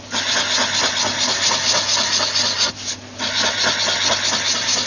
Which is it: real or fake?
real